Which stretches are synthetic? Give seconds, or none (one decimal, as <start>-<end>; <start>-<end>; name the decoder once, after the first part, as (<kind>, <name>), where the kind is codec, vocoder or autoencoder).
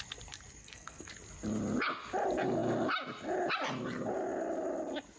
0.6-1.1 (codec, SNAC)